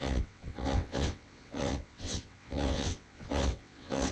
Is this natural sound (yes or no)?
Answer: no